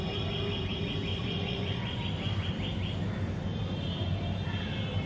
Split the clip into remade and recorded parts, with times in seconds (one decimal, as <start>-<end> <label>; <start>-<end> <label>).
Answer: 0.0-1.1 recorded; 1.1-2.0 remade; 2.0-5.1 recorded